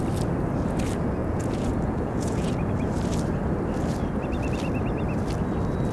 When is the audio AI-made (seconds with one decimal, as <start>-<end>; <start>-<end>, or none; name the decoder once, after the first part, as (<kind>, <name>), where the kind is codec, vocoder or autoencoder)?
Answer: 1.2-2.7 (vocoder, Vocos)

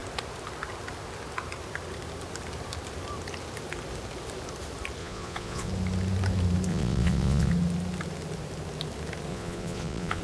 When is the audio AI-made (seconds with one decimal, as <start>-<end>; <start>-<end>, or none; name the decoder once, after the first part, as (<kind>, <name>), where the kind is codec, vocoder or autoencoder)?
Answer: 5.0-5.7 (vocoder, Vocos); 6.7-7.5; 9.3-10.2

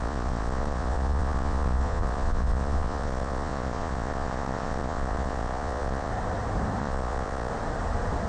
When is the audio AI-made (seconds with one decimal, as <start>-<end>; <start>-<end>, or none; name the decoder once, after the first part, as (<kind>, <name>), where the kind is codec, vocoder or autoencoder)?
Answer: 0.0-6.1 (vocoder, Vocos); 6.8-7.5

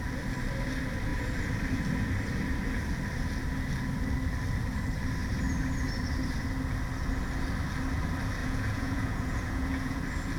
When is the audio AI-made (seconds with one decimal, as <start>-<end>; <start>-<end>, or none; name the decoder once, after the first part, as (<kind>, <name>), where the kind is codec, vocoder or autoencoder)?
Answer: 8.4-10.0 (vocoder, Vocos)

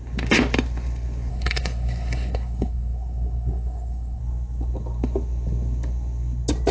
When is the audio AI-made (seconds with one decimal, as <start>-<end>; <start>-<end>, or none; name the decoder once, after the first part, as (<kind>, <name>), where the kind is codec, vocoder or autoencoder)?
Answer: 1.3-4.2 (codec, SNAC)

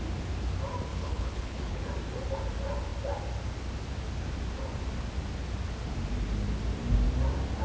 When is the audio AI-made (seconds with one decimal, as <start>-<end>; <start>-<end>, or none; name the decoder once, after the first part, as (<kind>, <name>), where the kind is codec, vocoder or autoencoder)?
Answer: 0.9-1.8 (codec, HILCodec)